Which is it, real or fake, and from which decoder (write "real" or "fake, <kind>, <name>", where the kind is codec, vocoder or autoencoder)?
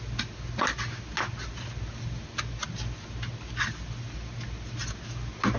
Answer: real